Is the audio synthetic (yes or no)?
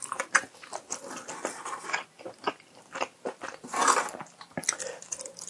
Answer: no